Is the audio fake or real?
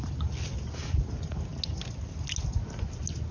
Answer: real